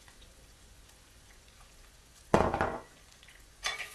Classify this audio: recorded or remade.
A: remade